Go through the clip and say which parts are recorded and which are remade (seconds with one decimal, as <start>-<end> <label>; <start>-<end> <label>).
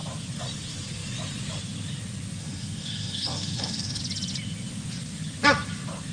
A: 0.0-2.4 recorded; 2.4-4.0 remade; 4.0-6.1 recorded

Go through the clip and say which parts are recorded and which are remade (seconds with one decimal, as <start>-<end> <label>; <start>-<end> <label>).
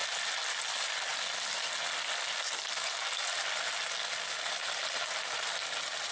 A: 0.0-6.1 recorded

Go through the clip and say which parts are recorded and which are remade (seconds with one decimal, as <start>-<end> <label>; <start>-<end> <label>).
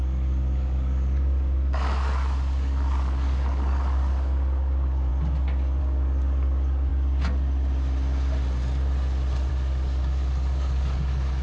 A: 0.0-5.1 remade; 5.1-5.8 recorded; 5.8-6.9 remade; 6.9-9.5 recorded; 9.5-11.4 remade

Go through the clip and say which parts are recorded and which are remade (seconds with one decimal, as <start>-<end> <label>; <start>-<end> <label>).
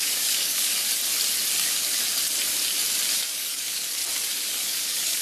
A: 0.0-1.0 remade; 1.0-3.1 recorded; 3.1-4.0 remade; 4.0-4.5 recorded; 4.5-5.2 remade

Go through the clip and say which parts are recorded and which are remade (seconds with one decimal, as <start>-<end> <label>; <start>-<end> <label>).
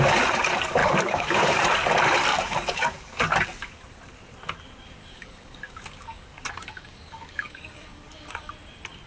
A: 0.0-0.8 recorded; 0.8-1.6 remade; 1.6-2.3 recorded; 2.3-3.8 remade; 3.8-5.0 recorded; 5.0-8.5 remade; 8.5-9.1 recorded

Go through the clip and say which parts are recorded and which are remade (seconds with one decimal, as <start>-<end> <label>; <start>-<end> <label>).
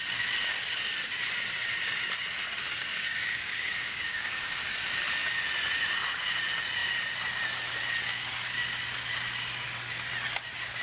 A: 0.0-2.9 recorded; 2.9-4.7 remade; 4.7-10.8 recorded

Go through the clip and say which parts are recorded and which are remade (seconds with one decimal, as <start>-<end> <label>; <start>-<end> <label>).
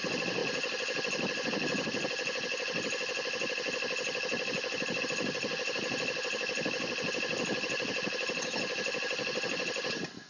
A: 0.0-10.3 recorded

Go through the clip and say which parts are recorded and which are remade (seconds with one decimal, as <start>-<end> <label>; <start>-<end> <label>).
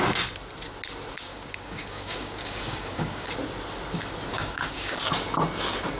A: 0.0-1.3 recorded; 1.3-3.3 remade; 3.3-4.3 recorded; 4.3-5.0 remade; 5.0-6.0 recorded